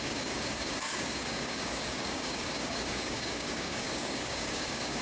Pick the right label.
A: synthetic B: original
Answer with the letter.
A